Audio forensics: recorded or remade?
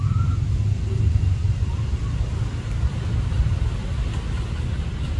recorded